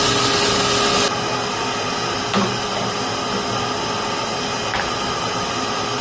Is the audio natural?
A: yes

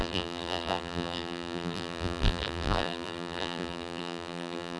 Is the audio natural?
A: no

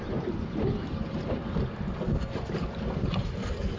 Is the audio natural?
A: no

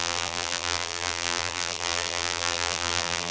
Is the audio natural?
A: no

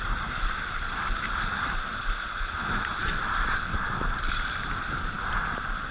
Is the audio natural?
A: yes